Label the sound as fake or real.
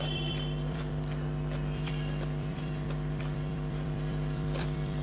fake